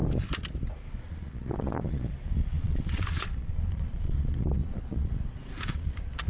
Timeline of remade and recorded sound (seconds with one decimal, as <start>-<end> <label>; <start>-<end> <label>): 0.0-1.0 recorded; 1.0-6.3 remade